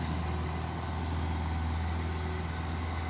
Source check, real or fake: real